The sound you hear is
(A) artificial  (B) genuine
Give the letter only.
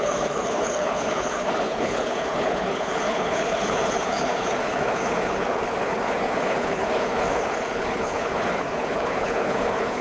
A